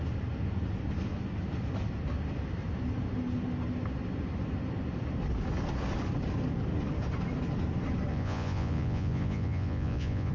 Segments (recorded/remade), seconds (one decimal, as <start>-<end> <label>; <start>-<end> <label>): 0.0-8.1 recorded; 8.1-10.3 remade